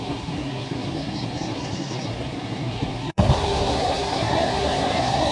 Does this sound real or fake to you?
fake